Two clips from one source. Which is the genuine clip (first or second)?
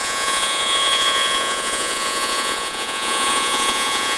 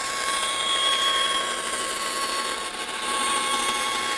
second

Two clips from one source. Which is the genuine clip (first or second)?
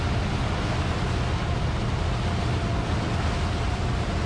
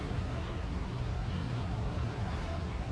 first